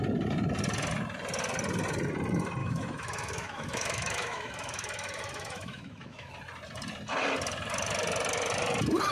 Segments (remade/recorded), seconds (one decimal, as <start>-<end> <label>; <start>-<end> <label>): 0.0-2.6 recorded; 2.6-6.3 remade; 6.3-9.1 recorded